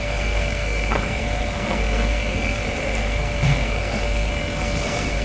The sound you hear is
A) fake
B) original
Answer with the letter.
A